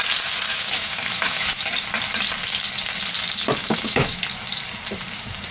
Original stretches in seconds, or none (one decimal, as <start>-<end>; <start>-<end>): 0.0-0.5; 1.6-3.6; 4.2-5.5